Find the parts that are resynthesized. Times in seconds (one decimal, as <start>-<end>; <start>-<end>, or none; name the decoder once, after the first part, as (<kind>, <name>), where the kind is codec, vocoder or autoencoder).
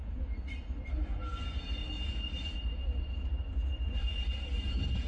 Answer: none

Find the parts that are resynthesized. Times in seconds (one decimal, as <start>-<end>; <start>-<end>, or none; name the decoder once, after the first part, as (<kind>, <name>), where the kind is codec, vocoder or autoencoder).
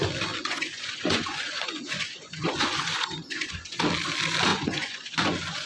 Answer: 0.4-3.8 (vocoder, Vocos); 4.5-5.7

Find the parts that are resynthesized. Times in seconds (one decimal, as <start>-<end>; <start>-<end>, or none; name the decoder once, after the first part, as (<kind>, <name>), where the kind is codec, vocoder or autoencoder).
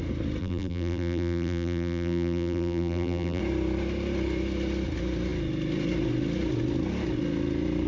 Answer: 0.4-3.4 (vocoder, BigVGAN v2)